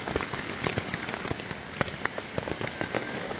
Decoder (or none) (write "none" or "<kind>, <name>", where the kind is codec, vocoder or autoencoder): codec, DAC